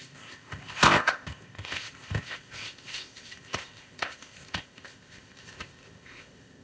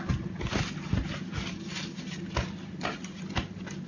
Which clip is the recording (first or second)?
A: second